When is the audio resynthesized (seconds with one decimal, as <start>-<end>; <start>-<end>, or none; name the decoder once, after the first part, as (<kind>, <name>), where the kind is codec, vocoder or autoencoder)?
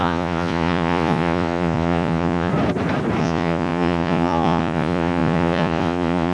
0.0-2.5 (vocoder, Vocos); 3.2-6.3